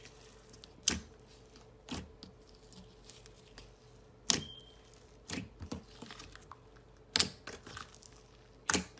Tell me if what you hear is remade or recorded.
recorded